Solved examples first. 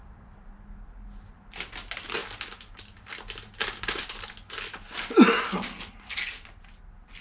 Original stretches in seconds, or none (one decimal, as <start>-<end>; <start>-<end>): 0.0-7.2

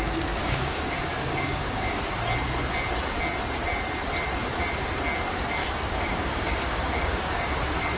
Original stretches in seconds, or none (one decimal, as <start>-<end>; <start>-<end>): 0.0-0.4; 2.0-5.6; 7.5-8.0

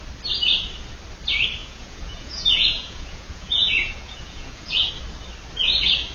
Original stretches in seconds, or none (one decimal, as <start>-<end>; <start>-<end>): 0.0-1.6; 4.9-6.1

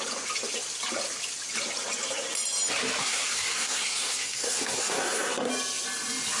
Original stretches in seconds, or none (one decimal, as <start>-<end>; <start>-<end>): 0.0-3.0; 5.5-6.4

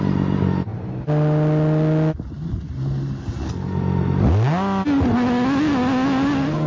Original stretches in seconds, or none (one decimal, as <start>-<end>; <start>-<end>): 0.0-6.7

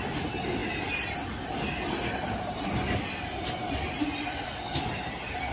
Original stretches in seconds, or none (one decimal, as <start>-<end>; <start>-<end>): 0.0-5.5

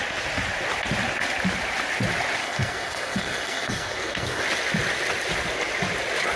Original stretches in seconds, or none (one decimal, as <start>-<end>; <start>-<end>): 0.0-2.4; 4.4-6.4

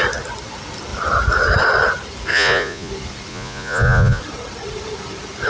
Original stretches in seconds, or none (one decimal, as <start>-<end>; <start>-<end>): 0.0-2.3; 2.9-3.3; 4.2-5.5